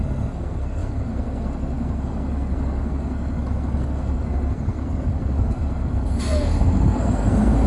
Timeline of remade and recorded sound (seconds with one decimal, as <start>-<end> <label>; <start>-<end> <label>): 0.0-7.7 remade